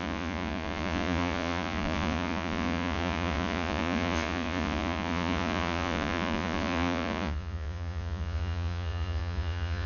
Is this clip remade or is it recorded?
remade